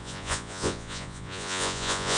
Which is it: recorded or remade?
remade